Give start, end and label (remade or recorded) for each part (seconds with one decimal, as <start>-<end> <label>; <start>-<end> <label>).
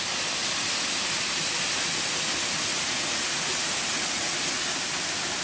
0.0-2.7 recorded; 2.7-3.7 remade; 3.7-5.4 recorded